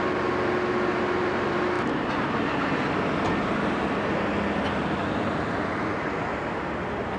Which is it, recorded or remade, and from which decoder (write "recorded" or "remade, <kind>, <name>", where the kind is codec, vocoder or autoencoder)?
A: recorded